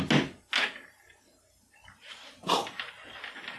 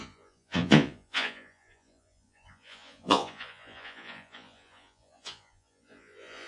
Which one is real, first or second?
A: first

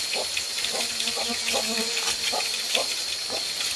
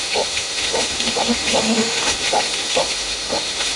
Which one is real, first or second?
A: first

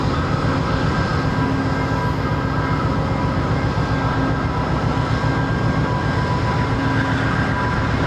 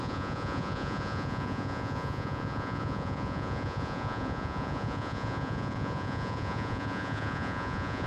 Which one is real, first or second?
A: first